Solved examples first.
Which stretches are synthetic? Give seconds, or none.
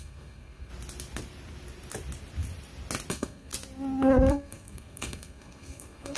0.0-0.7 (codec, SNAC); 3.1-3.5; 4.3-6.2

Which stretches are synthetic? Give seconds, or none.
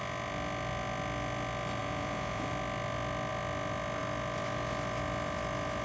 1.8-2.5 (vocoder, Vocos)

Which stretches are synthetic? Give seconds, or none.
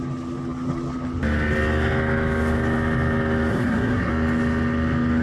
3.5-4.1 (codec, SNAC)